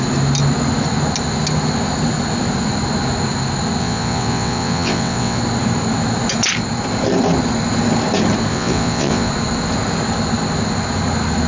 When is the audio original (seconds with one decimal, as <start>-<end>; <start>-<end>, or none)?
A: 0.0-3.8; 5.4-8.5; 9.3-11.5